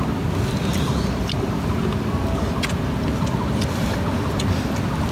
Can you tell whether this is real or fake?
real